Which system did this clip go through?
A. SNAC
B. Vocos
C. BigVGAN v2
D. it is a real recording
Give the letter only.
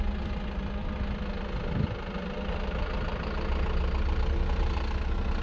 D